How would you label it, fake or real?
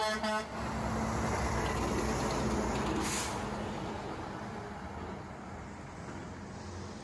real